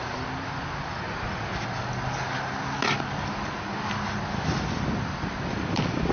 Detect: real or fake real